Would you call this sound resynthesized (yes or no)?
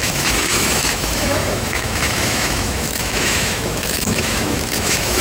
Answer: yes